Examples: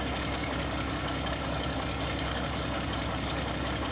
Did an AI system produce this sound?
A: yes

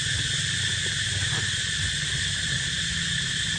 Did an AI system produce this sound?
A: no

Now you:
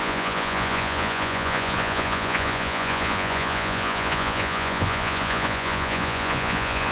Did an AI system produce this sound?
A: yes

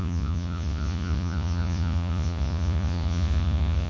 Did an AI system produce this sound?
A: yes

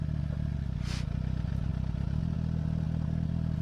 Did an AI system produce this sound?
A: no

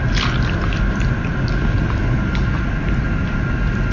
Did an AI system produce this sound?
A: no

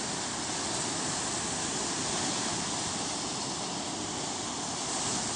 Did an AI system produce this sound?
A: no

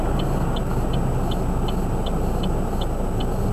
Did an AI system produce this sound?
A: no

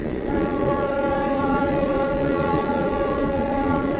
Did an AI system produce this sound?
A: yes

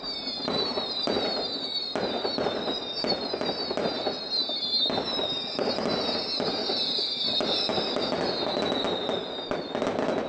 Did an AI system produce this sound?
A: no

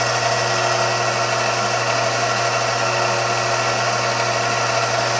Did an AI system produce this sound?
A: no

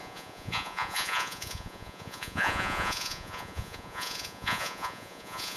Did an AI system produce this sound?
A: yes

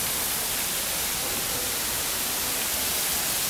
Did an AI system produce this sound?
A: no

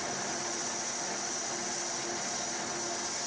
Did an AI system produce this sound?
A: no